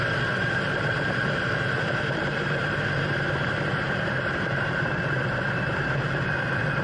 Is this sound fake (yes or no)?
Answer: yes